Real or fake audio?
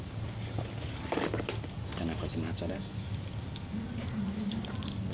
real